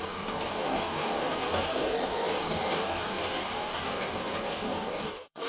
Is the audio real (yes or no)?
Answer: no